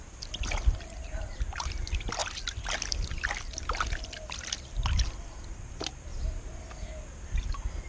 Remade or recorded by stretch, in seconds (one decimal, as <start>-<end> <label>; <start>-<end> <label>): 0.0-2.2 remade; 2.2-5.6 recorded; 5.6-6.1 remade; 6.1-7.5 recorded; 7.5-7.9 remade